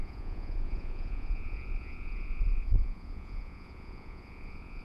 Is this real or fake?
fake